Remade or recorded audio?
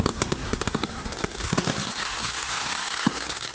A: remade